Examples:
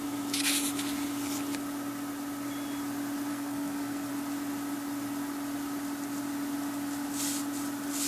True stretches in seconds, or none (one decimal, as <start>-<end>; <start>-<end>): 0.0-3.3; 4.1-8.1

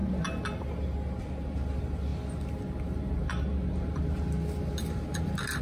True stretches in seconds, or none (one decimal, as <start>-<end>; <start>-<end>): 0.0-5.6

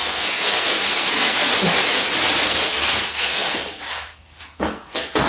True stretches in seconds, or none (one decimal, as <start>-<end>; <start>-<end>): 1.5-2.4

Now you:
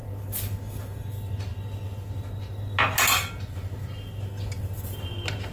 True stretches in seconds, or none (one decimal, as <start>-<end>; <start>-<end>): 0.0-5.5

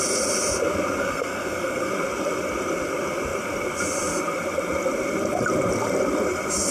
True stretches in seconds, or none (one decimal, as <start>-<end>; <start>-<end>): 0.0-1.0; 1.9-6.7

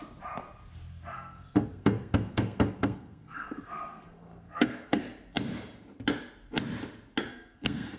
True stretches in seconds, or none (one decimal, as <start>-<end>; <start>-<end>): 0.0-0.9; 5.0-7.3

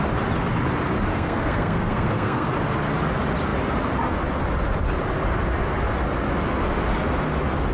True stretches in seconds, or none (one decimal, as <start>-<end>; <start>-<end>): 0.0-1.1; 2.5-7.7

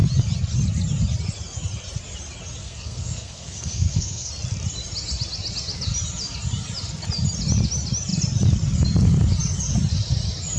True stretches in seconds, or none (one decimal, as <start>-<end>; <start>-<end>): 0.0-2.6; 4.3-10.6